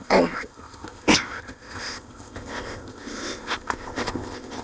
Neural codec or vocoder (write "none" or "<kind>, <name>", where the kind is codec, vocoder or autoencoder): codec, ZipCodec